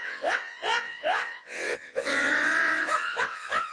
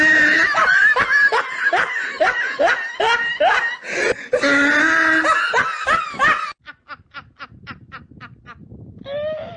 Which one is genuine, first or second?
second